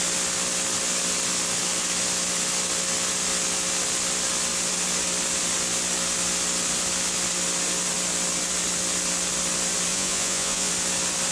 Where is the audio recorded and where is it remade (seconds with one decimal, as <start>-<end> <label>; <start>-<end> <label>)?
0.0-9.9 recorded; 9.9-10.7 remade; 10.7-11.3 recorded